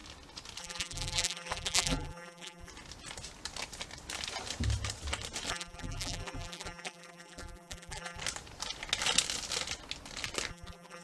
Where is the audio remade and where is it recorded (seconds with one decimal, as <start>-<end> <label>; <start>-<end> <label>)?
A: 0.0-0.6 recorded; 0.6-2.7 remade; 2.7-5.5 recorded; 5.5-8.2 remade; 8.2-10.5 recorded; 10.5-11.0 remade